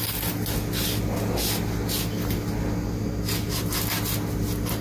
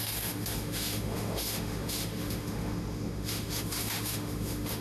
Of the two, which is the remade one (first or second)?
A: second